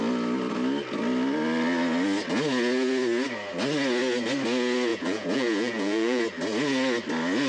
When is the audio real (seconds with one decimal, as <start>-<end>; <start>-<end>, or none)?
0.0-4.9; 6.2-7.5